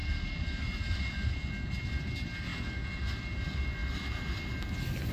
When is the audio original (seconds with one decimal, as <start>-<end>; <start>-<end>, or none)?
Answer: 0.0-5.1